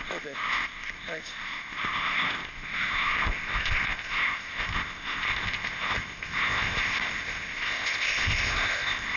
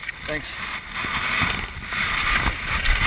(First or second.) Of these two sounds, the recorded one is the second